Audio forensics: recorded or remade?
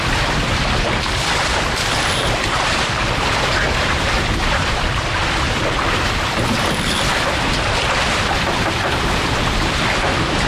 remade